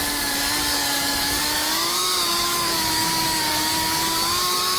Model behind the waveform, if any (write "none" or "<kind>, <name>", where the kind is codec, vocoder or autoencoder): codec, DAC